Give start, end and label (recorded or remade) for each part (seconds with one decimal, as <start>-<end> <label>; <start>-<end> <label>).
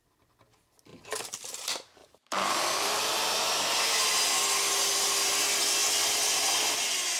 0.0-2.0 recorded; 2.0-3.0 remade; 3.0-7.2 recorded